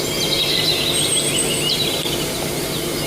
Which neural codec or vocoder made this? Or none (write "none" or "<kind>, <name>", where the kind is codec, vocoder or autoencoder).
vocoder, BigVGAN v2